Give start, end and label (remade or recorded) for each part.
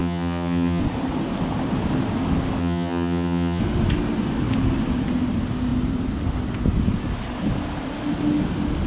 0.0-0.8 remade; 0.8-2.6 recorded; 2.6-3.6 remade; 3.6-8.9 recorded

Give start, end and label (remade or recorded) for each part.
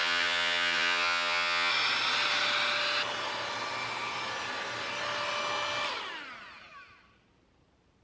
0.0-1.7 remade; 1.7-8.0 recorded